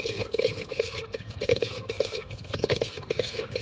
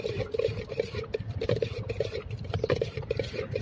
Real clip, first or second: second